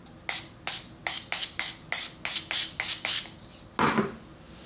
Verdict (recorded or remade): recorded